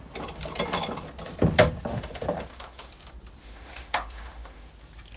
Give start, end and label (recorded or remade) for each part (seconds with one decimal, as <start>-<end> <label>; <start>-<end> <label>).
0.0-1.9 recorded; 1.9-2.9 remade; 2.9-3.4 recorded; 3.4-4.7 remade; 4.7-5.2 recorded

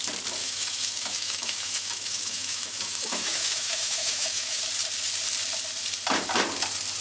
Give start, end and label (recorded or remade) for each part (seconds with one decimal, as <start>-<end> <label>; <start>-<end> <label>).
0.0-0.4 recorded; 0.4-4.6 remade; 4.6-7.0 recorded